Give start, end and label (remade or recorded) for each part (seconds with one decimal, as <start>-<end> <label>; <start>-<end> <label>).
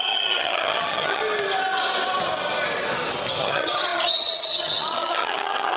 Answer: 0.0-1.2 remade; 1.2-3.4 recorded; 3.4-5.8 remade